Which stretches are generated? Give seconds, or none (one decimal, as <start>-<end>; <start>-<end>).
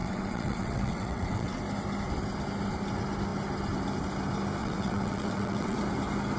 0.0-1.6; 4.6-5.8